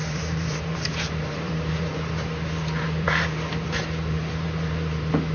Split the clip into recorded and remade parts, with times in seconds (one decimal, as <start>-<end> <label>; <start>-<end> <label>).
0.0-5.3 remade